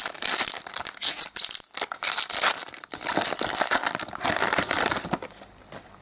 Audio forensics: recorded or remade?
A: remade